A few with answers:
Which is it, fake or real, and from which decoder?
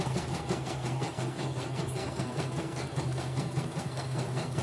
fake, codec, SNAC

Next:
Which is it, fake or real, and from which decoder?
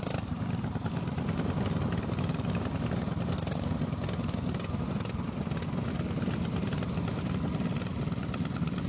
real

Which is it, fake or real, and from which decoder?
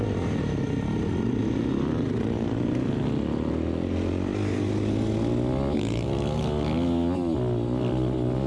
real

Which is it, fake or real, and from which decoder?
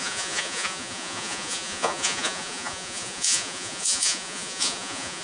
fake, vocoder, Vocos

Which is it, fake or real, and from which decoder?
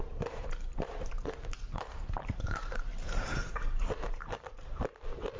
fake, vocoder, BigVGAN v2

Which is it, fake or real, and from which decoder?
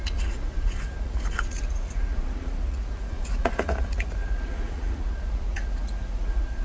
fake, vocoder, Vocos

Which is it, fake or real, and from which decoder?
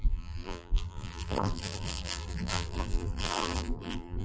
fake, vocoder, BigVGAN v2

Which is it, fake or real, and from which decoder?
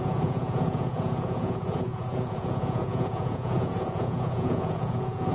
fake, vocoder, Vocos